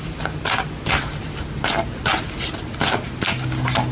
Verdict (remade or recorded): recorded